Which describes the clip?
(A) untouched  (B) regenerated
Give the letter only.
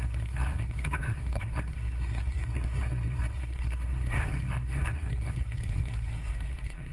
B